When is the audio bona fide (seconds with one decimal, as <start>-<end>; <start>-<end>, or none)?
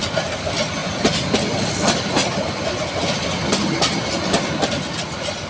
0.0-5.5